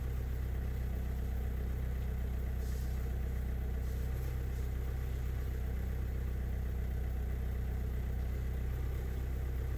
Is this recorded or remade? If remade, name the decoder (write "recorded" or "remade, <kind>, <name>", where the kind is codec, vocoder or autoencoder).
recorded